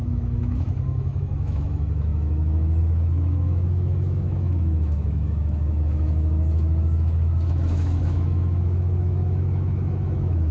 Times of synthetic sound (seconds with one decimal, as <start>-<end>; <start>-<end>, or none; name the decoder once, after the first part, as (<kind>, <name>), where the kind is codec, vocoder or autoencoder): 0.0-10.5 (autoencoder, DAC-VAE)